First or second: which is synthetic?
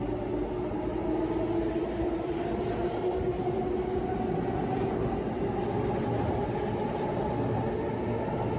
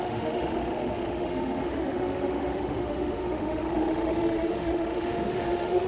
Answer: second